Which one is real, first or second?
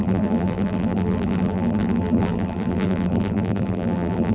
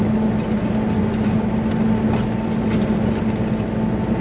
second